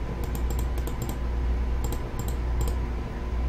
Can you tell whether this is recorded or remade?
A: recorded